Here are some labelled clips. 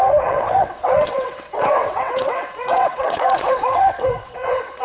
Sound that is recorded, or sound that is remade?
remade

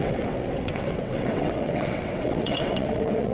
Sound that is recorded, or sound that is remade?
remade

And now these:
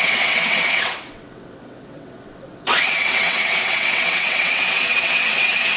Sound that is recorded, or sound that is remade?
remade